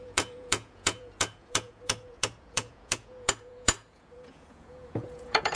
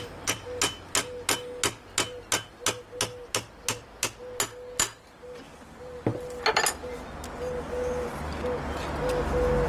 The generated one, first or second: first